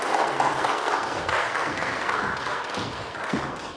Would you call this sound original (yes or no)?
no